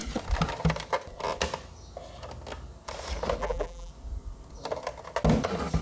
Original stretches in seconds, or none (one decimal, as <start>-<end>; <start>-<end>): 0.0-3.4; 3.9-5.8